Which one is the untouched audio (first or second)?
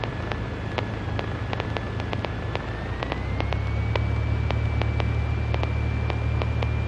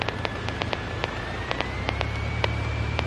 first